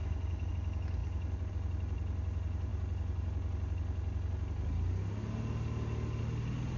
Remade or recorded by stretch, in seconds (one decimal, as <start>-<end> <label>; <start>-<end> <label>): 0.0-6.8 recorded